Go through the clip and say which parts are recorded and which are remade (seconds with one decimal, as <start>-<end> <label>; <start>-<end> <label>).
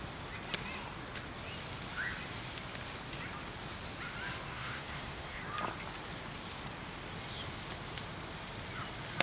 0.0-4.5 recorded; 4.5-5.4 remade; 5.4-9.2 recorded